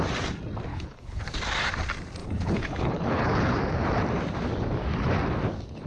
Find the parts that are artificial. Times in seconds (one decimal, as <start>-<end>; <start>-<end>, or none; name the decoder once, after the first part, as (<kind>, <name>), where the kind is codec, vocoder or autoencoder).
0.7-1.2 (codec, HILCodec); 2.2-3.6